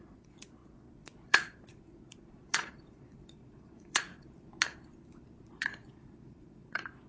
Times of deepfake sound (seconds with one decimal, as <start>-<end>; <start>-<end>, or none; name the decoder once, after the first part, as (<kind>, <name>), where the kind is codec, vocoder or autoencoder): 0.0-4.1 (vocoder, Vocos); 5.4-7.1